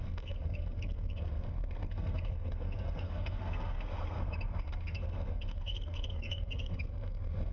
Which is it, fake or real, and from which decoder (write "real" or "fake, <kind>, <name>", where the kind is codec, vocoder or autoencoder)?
fake, codec, SNAC